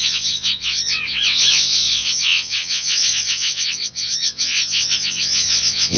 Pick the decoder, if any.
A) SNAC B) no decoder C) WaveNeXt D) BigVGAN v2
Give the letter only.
C